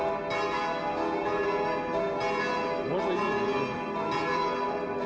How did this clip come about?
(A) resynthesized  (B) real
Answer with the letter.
B